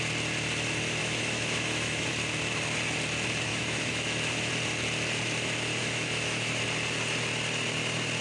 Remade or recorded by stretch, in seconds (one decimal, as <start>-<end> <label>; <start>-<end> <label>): 0.0-1.0 recorded; 1.0-2.1 remade; 2.1-3.5 recorded; 3.5-4.5 remade; 4.5-5.8 recorded; 5.8-6.6 remade; 6.6-8.2 recorded